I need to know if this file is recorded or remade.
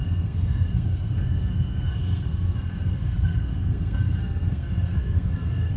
remade